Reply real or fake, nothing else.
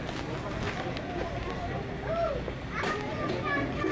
real